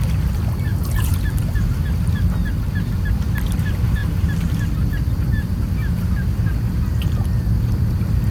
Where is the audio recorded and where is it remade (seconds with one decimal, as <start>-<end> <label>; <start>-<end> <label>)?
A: 0.0-0.7 recorded; 0.7-1.2 remade; 1.2-8.3 recorded